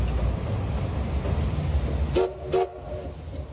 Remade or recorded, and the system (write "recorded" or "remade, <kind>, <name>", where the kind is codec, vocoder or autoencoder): recorded